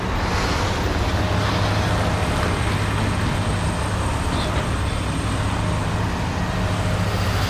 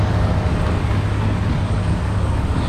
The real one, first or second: first